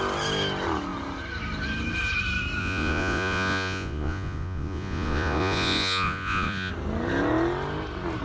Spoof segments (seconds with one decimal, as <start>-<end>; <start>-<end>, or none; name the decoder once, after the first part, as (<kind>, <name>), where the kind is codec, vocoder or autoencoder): 2.6-6.7 (vocoder, Vocos)